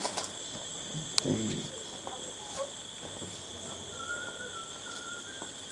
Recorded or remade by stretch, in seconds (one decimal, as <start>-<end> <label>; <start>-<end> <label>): 0.0-5.7 recorded